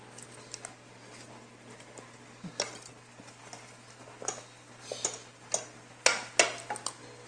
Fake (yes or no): no